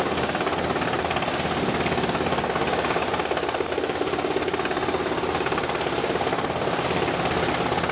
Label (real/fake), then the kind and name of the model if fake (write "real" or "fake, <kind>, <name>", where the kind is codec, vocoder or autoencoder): real